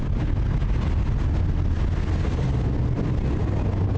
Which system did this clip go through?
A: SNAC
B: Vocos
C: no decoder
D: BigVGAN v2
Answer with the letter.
C